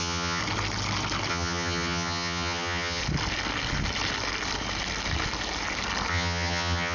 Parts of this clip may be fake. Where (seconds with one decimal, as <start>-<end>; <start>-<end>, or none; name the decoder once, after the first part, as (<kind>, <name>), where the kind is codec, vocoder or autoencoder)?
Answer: 0.0-0.4 (vocoder, HiFi-GAN); 1.3-3.0; 6.1-6.9